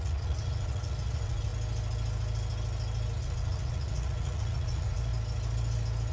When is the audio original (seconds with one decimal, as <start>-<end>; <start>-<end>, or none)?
1.5-3.2; 5.1-6.1